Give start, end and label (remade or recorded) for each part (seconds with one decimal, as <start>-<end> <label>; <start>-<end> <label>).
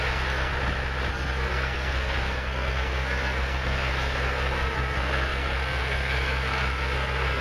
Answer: 0.0-0.5 remade; 0.5-1.1 recorded; 1.1-7.4 remade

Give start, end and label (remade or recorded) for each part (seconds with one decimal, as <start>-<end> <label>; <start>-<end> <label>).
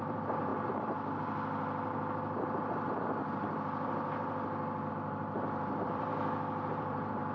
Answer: 0.0-0.5 remade; 0.5-4.9 recorded; 4.9-6.1 remade; 6.1-6.7 recorded; 6.7-7.3 remade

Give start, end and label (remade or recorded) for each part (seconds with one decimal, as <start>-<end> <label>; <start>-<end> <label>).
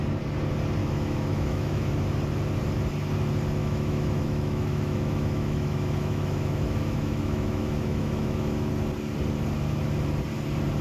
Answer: 0.0-0.8 recorded; 0.8-2.0 remade; 2.0-3.6 recorded; 3.6-8.7 remade; 8.7-10.8 recorded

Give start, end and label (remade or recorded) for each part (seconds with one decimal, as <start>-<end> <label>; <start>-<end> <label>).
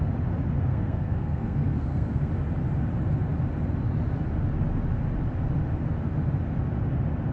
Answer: 0.0-0.7 recorded; 0.7-2.3 remade; 2.3-7.3 recorded